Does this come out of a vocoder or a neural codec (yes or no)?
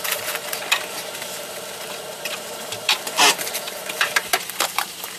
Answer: yes